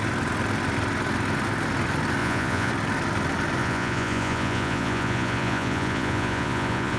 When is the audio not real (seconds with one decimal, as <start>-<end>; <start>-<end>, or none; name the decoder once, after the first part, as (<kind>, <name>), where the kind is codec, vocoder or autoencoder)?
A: 2.2-2.7 (vocoder, Vocos); 3.6-7.0